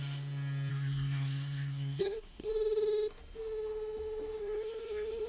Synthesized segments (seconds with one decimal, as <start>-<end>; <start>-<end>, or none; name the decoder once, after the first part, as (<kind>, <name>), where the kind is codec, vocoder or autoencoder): 0.7-2.5 (codec, SNAC); 4.4-5.3